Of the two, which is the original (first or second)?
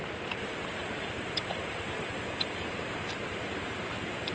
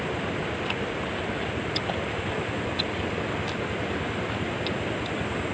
second